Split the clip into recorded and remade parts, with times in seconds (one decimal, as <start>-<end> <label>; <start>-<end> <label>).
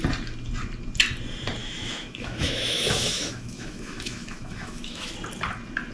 0.0-1.6 recorded; 1.6-5.1 remade; 5.1-5.9 recorded